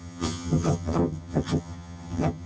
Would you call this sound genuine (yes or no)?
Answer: no